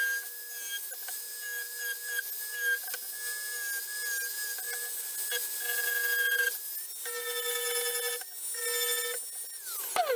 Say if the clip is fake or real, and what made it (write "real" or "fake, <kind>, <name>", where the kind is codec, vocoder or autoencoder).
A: real